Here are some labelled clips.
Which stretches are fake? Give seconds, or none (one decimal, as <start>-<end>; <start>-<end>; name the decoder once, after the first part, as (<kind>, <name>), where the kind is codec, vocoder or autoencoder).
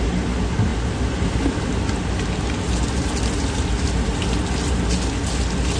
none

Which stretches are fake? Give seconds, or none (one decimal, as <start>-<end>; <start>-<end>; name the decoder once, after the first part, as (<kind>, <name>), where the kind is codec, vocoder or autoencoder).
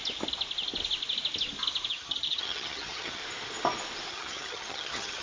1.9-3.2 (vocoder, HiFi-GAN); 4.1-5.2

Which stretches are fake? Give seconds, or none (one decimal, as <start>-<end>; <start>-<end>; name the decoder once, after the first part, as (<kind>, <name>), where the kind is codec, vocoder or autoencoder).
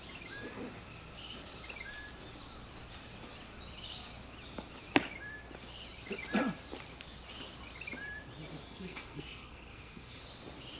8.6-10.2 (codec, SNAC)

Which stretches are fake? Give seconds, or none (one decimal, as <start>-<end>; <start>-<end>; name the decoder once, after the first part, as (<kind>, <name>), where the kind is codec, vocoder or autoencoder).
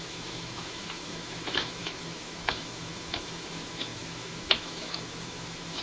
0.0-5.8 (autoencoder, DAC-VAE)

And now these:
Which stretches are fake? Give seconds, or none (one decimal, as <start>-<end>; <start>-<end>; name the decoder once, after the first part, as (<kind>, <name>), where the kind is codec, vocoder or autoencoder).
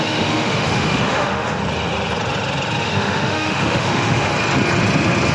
0.0-1.6 (autoencoder, DAC-VAE); 2.8-4.3